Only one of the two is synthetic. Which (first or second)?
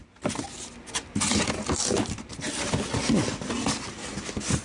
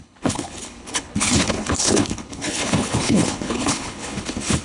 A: second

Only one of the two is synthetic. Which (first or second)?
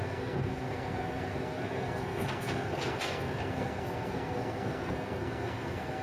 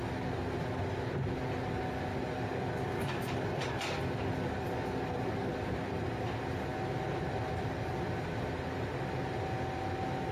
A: first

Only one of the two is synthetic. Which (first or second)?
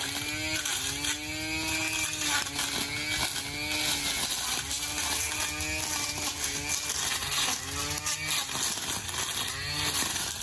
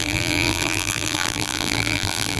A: second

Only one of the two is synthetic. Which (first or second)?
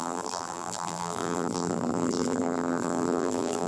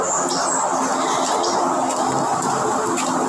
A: first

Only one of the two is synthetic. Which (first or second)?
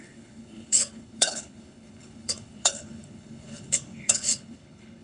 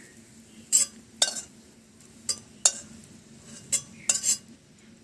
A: first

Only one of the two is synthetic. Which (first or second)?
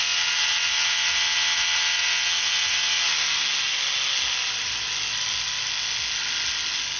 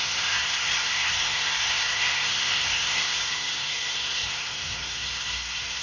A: second